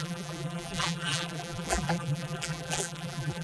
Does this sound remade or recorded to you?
remade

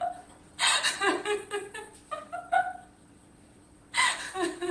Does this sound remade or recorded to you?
remade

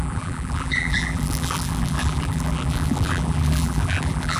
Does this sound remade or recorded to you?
remade